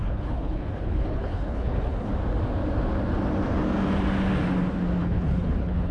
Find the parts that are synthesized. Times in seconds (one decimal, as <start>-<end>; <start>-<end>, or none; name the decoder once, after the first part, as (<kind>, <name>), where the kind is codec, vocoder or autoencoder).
0.0-2.1 (codec, HILCodec); 5.0-5.9